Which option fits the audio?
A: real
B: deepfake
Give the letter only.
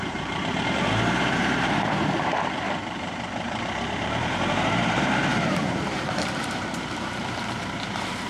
B